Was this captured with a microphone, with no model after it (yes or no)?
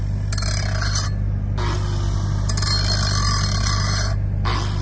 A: yes